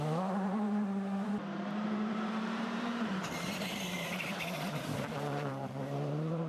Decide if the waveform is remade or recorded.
remade